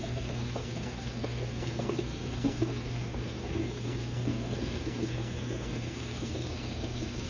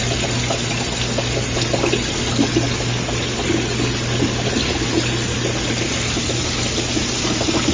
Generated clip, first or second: first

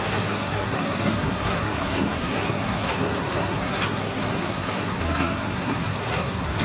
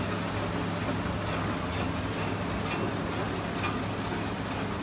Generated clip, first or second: first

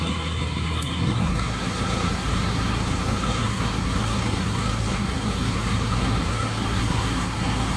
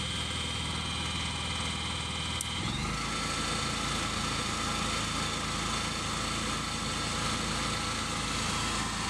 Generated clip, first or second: first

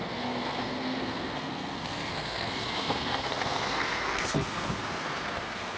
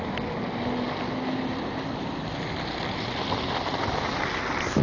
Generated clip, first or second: first